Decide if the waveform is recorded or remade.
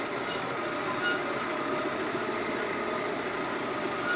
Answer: recorded